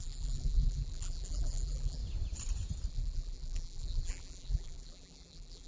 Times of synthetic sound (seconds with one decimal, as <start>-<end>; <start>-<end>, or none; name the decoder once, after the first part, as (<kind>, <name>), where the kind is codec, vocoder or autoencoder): 0.0-2.0 (vocoder, BigVGAN v2); 2.9-5.7